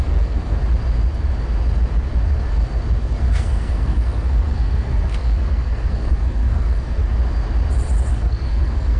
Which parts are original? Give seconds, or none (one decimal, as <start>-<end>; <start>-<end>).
0.6-3.0; 7.0-8.1